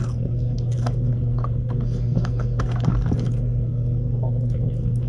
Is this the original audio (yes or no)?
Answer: no